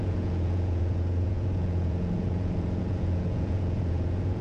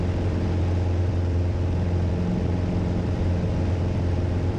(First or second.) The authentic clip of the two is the second